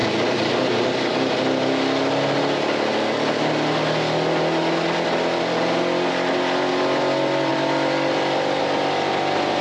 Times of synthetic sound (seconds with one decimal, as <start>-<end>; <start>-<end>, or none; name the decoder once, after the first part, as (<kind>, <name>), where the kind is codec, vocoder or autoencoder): 7.5-8.6 (vocoder, BigVGAN v2)